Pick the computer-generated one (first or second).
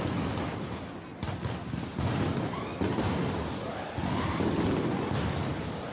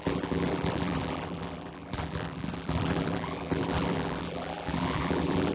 second